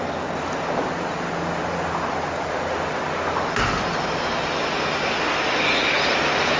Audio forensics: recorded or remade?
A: recorded